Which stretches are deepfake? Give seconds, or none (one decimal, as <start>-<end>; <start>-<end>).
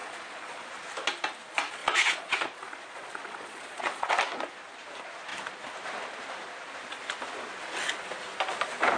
0.0-0.7; 1.8-4.1